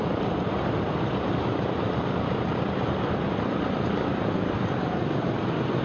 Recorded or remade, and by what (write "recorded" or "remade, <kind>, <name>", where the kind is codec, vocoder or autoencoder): remade, vocoder, BigVGAN v2